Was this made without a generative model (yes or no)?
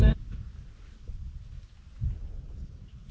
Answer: yes